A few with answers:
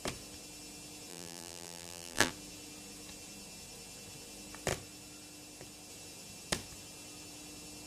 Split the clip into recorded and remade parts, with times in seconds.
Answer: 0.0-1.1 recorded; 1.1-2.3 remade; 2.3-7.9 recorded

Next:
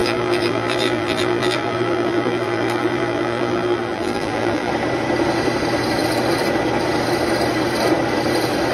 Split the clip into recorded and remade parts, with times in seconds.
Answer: 0.0-4.7 remade; 4.7-8.7 recorded

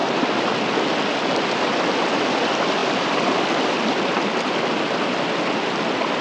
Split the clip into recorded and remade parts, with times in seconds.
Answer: 0.0-1.2 remade; 1.2-2.8 recorded; 2.8-4.6 remade; 4.6-6.2 recorded

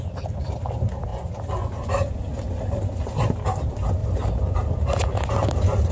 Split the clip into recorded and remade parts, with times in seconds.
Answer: 0.0-4.0 recorded; 4.0-4.7 remade; 4.7-5.9 recorded

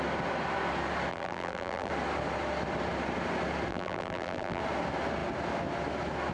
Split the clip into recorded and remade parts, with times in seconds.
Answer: 0.0-1.1 recorded; 1.1-1.9 remade; 1.9-3.7 recorded; 3.7-4.6 remade; 4.6-6.3 recorded

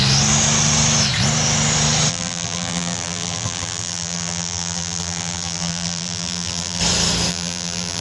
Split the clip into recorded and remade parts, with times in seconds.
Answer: 0.0-2.1 recorded; 2.1-6.8 remade; 6.8-7.3 recorded; 7.3-8.0 remade

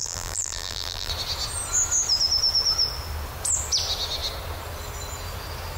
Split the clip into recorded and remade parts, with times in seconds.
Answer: 0.0-1.1 remade; 1.1-5.8 recorded

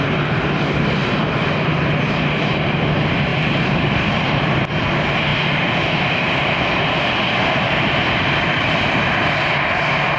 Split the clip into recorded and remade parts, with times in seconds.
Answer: 0.0-1.0 recorded; 1.0-1.8 remade; 1.8-3.3 recorded; 3.3-4.7 remade; 4.7-5.3 recorded; 5.3-9.4 remade; 9.4-10.2 recorded